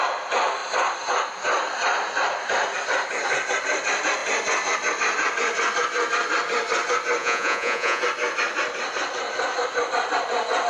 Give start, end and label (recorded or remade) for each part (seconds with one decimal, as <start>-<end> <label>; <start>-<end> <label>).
0.0-7.2 recorded; 7.2-8.0 remade; 8.0-10.7 recorded